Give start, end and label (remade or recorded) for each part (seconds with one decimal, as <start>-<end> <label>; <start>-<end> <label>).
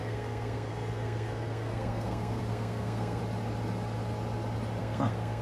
0.0-3.2 remade; 3.2-4.8 recorded; 4.8-5.4 remade